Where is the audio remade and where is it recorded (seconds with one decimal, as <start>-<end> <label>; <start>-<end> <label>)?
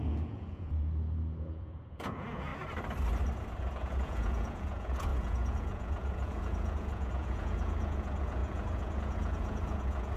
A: 0.0-2.5 remade; 2.5-3.6 recorded; 3.6-10.2 remade